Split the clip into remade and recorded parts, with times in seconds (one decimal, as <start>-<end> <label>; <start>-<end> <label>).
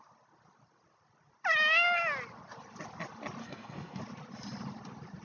0.0-3.4 recorded; 3.4-4.0 remade; 4.0-5.2 recorded